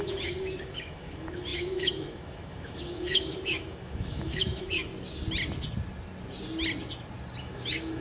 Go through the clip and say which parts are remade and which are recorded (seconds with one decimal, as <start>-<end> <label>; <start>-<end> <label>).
0.0-4.9 remade; 4.9-7.4 recorded; 7.4-8.0 remade